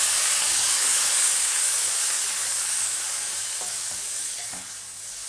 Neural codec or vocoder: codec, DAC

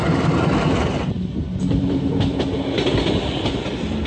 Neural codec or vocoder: none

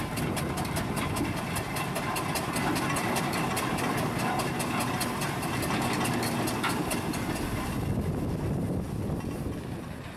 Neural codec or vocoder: none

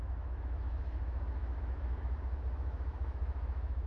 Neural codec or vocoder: autoencoder, DAC-VAE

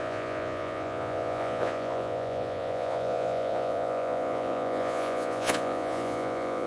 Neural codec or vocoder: vocoder, Vocos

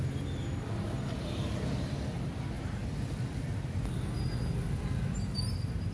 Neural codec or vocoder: none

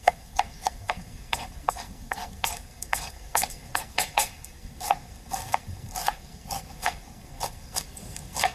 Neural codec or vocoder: codec, SNAC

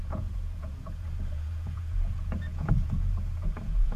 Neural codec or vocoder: vocoder, Vocos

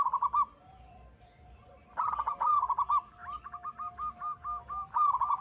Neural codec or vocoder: none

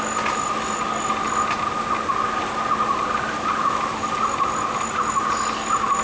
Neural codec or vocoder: none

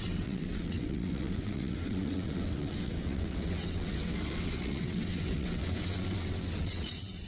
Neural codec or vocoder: vocoder, WaveNeXt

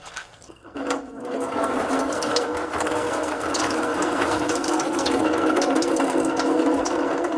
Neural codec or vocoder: codec, SNAC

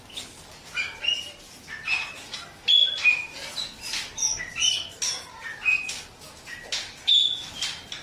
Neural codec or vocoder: none